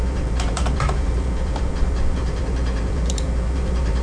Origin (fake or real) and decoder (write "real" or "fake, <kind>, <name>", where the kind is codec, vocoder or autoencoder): fake, vocoder, BigVGAN v2